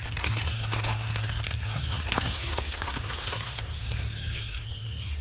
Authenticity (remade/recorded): remade